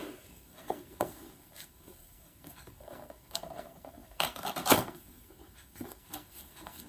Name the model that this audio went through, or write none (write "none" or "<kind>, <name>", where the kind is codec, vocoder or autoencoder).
codec, SNAC